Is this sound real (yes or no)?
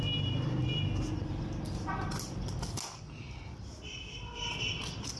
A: yes